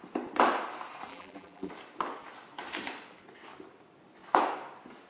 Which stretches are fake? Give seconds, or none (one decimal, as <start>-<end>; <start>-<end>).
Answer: 1.1-1.7